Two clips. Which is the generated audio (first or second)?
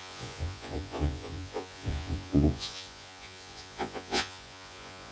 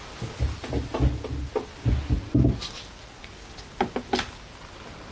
first